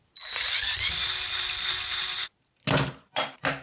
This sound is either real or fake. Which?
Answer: real